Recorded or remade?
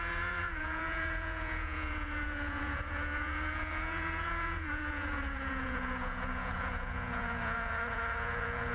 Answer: remade